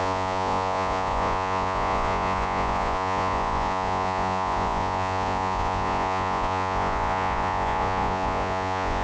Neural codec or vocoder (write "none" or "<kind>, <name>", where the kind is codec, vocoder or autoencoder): vocoder, Vocos